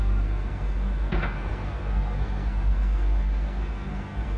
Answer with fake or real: fake